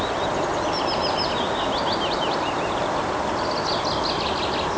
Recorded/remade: recorded